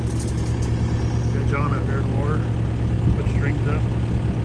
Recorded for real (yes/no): yes